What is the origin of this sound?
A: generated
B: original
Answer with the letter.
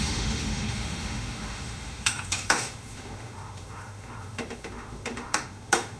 A